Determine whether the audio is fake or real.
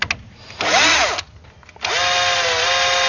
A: real